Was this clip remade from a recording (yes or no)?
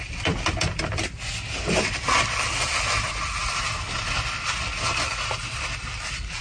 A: no